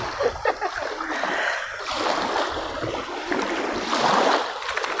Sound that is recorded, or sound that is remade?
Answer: recorded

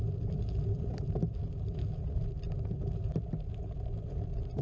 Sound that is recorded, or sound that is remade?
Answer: recorded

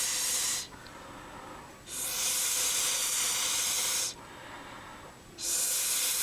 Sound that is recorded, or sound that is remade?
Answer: recorded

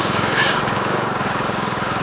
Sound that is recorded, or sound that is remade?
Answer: remade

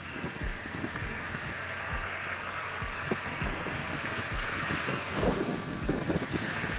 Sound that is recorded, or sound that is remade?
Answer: remade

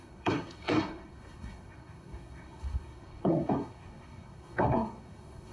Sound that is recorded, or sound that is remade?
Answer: remade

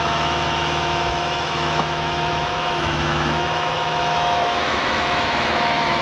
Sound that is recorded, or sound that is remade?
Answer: remade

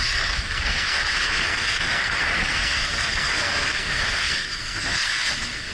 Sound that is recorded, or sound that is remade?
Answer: remade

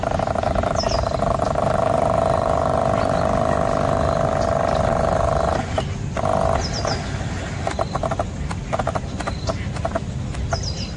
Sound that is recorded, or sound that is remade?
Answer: recorded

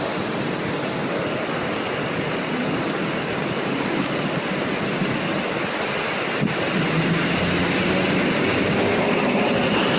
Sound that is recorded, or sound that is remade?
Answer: recorded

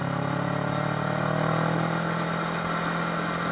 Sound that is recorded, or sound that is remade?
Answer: recorded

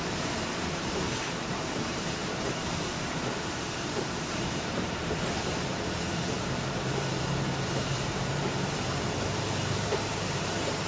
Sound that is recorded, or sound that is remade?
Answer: remade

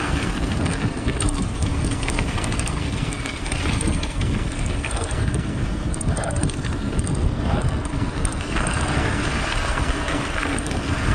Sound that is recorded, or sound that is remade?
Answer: remade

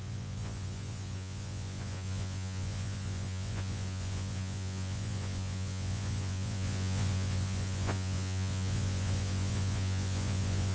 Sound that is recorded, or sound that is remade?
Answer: remade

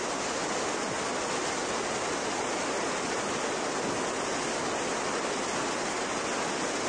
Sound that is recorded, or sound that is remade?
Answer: recorded